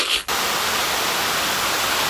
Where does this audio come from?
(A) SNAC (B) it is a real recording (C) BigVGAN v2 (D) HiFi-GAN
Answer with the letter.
B